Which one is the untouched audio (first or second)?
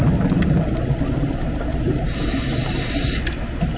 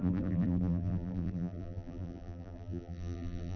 first